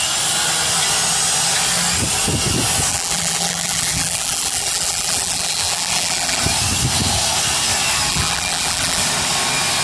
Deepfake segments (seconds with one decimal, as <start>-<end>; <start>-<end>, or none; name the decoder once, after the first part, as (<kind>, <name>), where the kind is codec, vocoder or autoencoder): 2.9-6.4 (vocoder, BigVGAN v2); 8.1-9.0